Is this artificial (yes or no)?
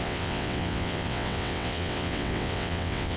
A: yes